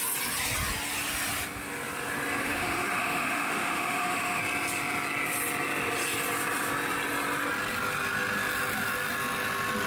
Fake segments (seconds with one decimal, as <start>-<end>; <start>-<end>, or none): 2.4-4.4